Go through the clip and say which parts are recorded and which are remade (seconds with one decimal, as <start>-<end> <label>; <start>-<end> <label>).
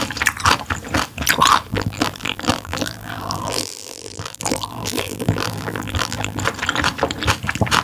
0.0-1.7 recorded; 1.7-6.4 remade; 6.4-7.8 recorded